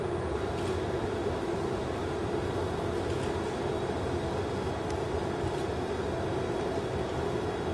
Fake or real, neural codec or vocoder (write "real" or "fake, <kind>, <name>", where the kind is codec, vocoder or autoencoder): real